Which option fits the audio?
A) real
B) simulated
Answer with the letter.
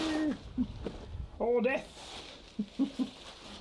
A